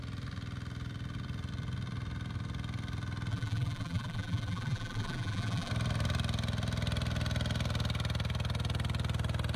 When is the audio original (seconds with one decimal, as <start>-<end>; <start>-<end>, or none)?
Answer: 0.0-3.3; 5.7-9.6